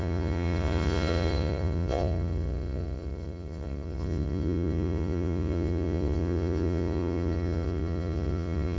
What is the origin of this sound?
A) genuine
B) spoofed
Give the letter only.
B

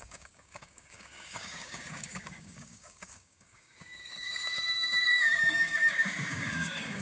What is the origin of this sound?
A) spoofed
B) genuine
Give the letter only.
A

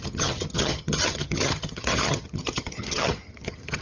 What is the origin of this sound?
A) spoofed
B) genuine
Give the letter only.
A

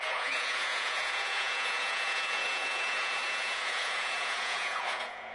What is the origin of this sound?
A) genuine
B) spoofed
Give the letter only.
B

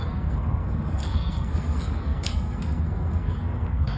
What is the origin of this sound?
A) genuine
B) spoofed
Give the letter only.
B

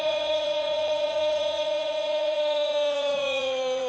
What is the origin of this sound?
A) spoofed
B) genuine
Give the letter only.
A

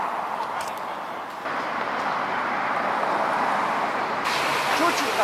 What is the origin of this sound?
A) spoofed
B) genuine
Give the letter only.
B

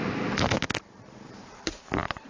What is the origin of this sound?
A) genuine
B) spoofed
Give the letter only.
A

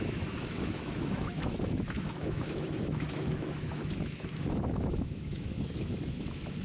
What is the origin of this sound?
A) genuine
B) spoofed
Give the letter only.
B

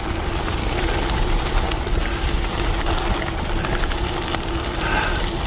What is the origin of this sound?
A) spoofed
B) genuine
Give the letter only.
B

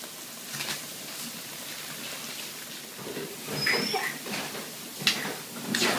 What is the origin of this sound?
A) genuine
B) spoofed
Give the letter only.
A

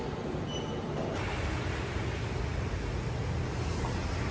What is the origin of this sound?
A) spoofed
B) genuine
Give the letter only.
B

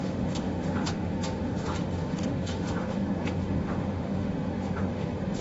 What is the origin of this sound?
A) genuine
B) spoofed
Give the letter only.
B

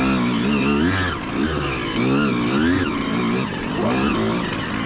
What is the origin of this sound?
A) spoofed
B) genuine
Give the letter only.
B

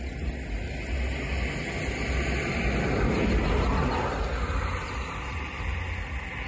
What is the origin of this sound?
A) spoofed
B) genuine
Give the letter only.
B